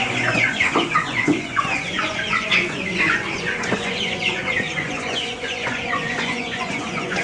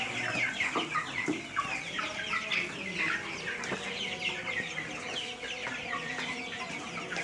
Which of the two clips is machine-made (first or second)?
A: first